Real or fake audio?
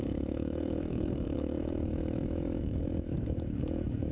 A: fake